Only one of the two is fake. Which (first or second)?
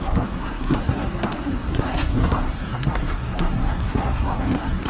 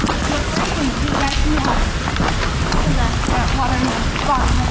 first